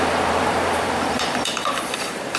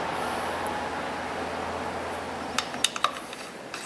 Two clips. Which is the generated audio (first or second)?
first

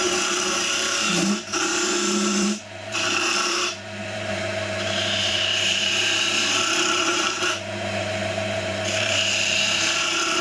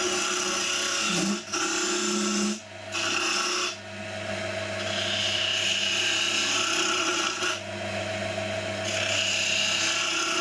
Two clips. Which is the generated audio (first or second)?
first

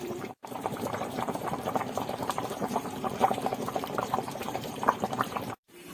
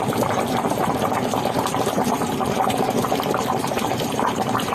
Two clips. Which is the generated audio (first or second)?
first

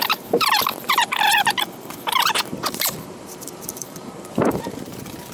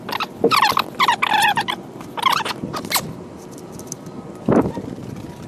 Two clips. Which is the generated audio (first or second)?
first